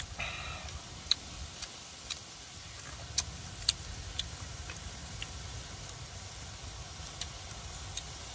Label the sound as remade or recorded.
recorded